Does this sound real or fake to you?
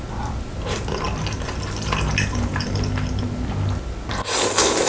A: real